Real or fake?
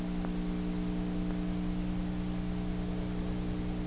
real